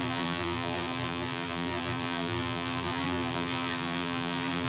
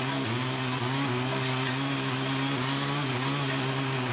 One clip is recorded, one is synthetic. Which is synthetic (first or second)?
first